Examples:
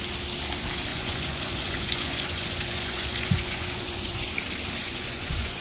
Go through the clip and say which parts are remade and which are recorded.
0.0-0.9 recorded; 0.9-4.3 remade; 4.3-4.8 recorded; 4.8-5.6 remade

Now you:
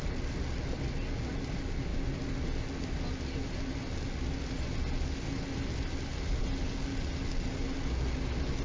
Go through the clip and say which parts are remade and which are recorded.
0.0-8.6 recorded

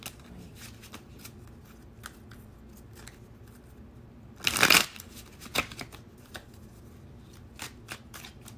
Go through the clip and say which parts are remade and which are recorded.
0.0-8.6 recorded

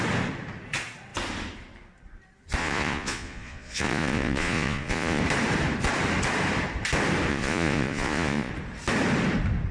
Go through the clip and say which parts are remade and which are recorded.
0.0-2.6 recorded; 2.6-5.2 remade; 5.2-7.3 recorded; 7.3-8.5 remade; 8.5-9.7 recorded

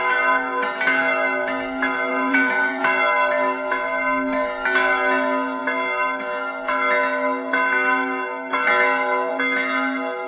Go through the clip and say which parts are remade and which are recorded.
0.0-2.1 recorded; 2.1-2.8 remade; 2.8-10.3 recorded

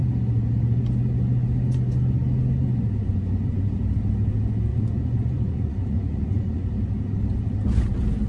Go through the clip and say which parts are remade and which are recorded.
0.0-4.7 recorded; 4.7-6.7 remade; 6.7-8.3 recorded

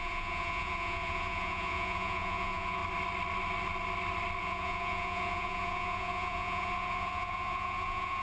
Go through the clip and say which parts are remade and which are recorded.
0.0-2.8 remade; 2.8-4.4 recorded; 4.4-8.2 remade